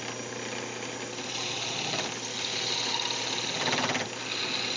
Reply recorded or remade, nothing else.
recorded